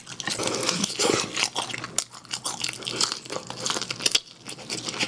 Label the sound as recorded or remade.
recorded